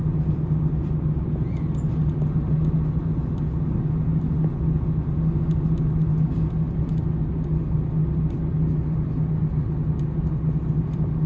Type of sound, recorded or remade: recorded